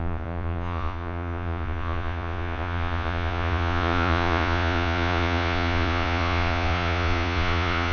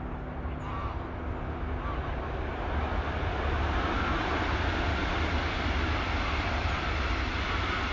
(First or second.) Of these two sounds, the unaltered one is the second